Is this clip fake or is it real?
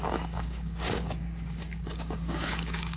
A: fake